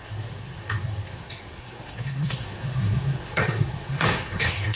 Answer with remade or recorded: remade